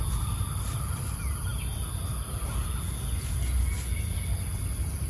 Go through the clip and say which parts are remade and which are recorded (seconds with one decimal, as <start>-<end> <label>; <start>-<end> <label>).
0.0-5.1 recorded